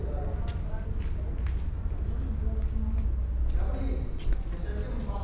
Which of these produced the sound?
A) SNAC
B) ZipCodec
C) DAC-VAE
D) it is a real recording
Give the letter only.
D